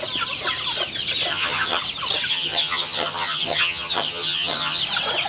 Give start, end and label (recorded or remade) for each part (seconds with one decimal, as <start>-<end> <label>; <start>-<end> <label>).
0.0-1.3 recorded; 1.3-1.8 remade; 1.8-2.3 recorded; 2.3-4.8 remade; 4.8-5.3 recorded